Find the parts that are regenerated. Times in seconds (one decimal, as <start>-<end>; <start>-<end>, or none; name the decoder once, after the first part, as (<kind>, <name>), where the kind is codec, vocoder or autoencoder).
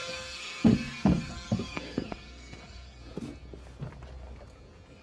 0.0-3.0 (codec, SNAC)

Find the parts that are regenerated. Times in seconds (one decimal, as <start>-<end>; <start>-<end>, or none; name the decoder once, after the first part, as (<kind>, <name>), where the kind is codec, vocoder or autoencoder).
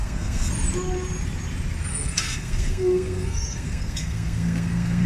0.0-0.5 (codec, SNAC); 1.9-5.1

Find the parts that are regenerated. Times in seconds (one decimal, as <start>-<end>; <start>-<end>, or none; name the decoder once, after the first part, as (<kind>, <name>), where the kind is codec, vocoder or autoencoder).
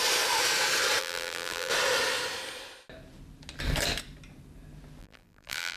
1.0-1.7 (vocoder, BigVGAN v2); 5.0-5.8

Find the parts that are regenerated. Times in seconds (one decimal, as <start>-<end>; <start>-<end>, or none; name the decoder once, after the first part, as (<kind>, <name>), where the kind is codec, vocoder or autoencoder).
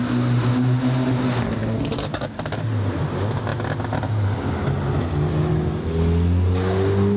1.6-3.0 (vocoder, BigVGAN v2)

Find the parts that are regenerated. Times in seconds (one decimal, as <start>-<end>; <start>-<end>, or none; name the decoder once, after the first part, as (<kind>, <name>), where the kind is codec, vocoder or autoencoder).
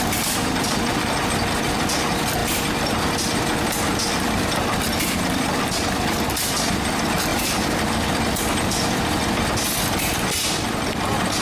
7.3-7.8 (vocoder, BigVGAN v2)